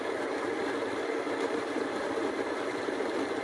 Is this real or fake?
fake